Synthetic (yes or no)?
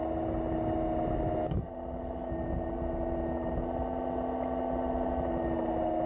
no